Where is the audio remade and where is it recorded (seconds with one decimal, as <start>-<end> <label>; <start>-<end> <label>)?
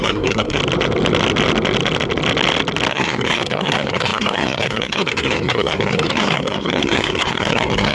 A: 0.0-0.6 remade; 0.6-2.9 recorded; 2.9-7.9 remade